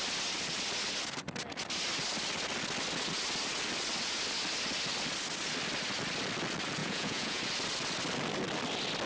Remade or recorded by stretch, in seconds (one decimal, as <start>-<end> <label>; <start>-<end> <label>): 0.0-6.8 recorded; 6.8-7.4 remade; 7.4-9.1 recorded